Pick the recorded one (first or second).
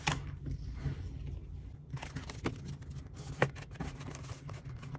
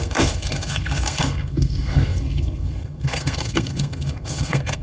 first